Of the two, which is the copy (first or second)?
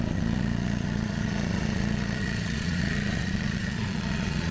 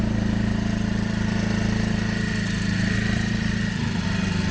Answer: first